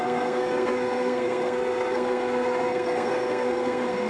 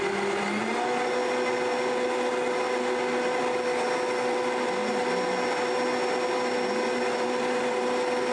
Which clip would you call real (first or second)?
second